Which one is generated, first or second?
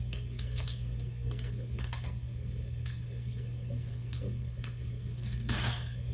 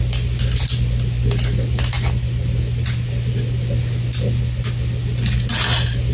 first